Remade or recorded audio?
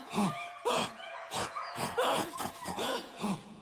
remade